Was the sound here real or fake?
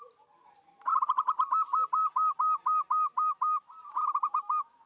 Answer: real